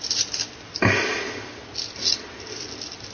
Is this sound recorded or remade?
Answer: recorded